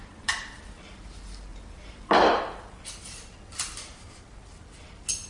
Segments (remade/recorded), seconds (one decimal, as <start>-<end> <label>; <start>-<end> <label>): 0.0-0.7 remade; 0.7-1.5 recorded; 1.5-2.4 remade; 2.4-5.3 recorded